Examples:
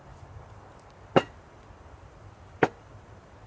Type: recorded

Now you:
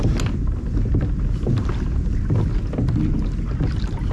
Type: recorded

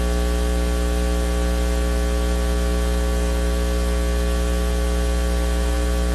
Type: recorded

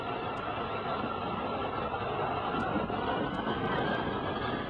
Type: recorded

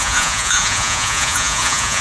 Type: remade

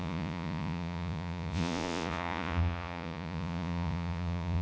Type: remade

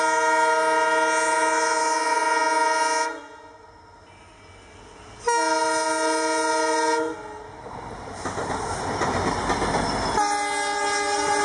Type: recorded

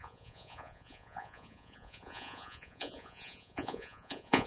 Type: remade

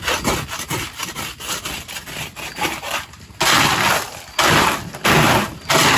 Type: recorded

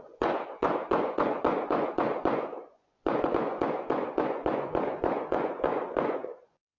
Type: remade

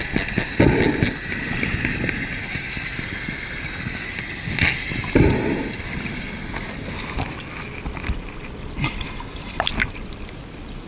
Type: recorded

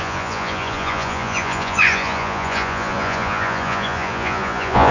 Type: remade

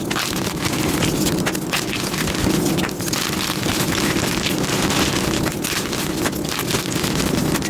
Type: recorded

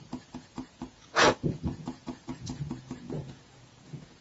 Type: remade